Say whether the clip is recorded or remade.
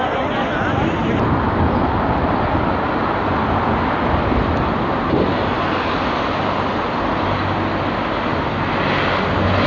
recorded